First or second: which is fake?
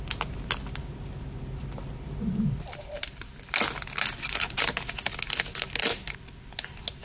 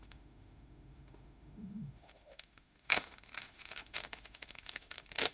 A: second